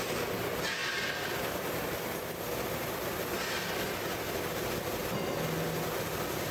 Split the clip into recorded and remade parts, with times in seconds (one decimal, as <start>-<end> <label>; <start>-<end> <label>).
0.0-6.5 recorded